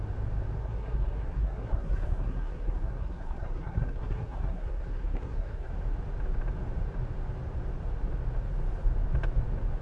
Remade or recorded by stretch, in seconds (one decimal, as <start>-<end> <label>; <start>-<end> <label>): 0.0-0.6 recorded; 0.6-5.7 remade; 5.7-9.8 recorded